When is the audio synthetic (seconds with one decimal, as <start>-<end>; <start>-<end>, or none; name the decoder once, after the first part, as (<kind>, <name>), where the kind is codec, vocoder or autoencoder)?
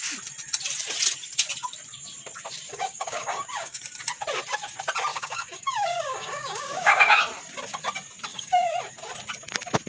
2.7-3.8 (codec, DAC); 5.1-7.2; 8.3-8.8